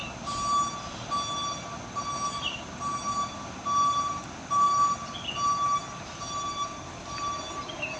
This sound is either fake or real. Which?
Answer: real